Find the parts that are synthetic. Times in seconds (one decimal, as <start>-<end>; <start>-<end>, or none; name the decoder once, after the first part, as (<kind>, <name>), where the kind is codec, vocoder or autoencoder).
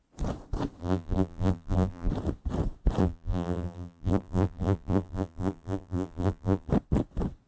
0.8-2.1 (vocoder, BigVGAN v2); 3.0-6.7